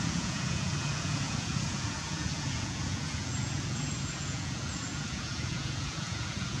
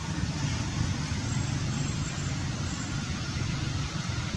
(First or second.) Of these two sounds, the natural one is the second